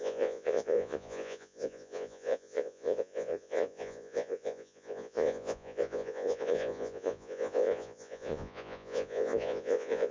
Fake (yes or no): yes